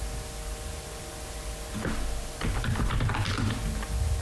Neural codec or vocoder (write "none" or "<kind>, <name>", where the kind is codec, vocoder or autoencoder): none